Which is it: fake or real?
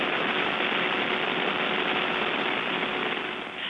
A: real